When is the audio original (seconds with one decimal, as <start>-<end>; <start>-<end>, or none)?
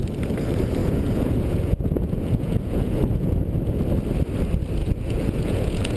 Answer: 0.0-0.8; 3.8-4.8